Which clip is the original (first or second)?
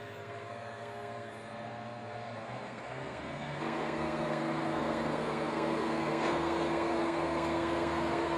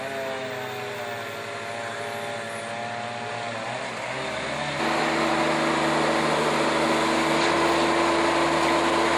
second